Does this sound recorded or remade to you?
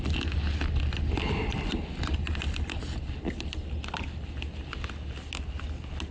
recorded